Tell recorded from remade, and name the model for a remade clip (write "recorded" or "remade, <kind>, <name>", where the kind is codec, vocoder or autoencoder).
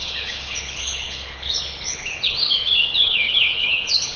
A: remade, codec, HILCodec